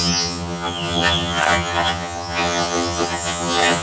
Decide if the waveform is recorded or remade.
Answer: remade